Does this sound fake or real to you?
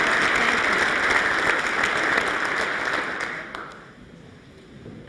real